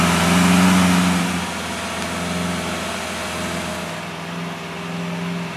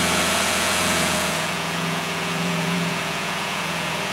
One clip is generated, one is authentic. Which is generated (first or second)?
second